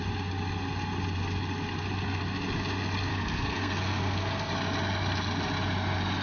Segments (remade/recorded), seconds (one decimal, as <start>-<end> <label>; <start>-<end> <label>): 0.0-3.1 recorded; 3.1-4.5 remade; 4.5-6.2 recorded

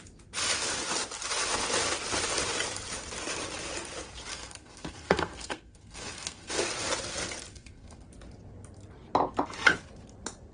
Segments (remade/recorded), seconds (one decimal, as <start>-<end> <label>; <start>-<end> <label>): 0.0-4.3 recorded; 4.3-6.6 remade; 6.6-7.5 recorded; 7.5-8.1 remade; 8.1-10.5 recorded

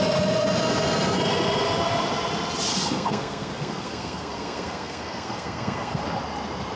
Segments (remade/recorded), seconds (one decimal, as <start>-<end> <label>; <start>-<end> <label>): 0.0-2.7 recorded; 2.7-6.0 remade; 6.0-6.8 recorded